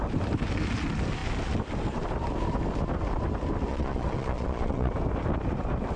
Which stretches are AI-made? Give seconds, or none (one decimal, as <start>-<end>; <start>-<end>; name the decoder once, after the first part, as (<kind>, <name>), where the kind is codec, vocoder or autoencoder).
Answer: 3.7-4.9 (vocoder, Vocos)